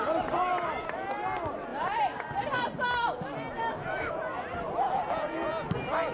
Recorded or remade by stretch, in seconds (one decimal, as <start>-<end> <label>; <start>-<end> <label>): 0.0-6.1 recorded